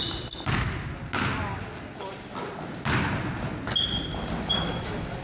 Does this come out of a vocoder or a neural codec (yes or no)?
no